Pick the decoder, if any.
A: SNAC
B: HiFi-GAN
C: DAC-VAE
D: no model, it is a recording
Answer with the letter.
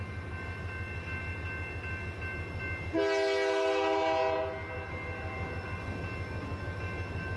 D